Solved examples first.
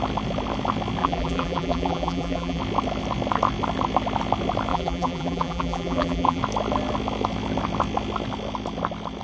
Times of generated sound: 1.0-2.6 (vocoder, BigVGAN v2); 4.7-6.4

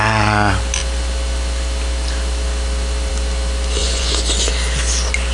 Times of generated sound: 3.8-4.5 (vocoder, Vocos)

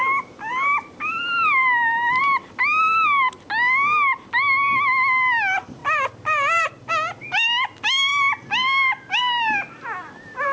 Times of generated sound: 5.8-6.9 (vocoder, BigVGAN v2)

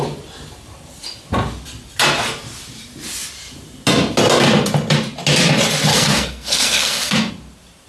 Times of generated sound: 5.9-7.3 (codec, SNAC)

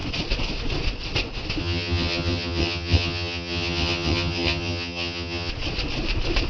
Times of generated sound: 1.6-5.5 (vocoder, HiFi-GAN)

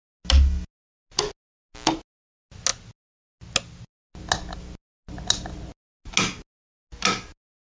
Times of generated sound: none